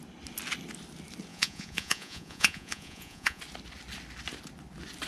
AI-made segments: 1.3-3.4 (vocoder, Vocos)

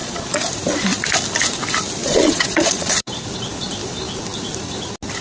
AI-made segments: 0.0-0.5 (vocoder, Vocos); 2.0-3.1

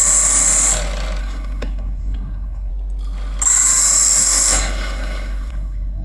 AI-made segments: 1.2-2.7 (codec, SNAC); 4.2-6.0

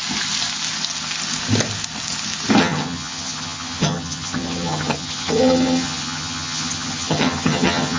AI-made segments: 2.6-8.0 (vocoder, HiFi-GAN)

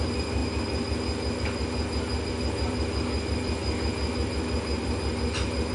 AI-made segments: 0.0-0.4 (vocoder, BigVGAN v2); 2.3-3.6; 4.4-5.7